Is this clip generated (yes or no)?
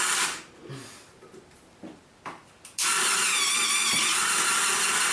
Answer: no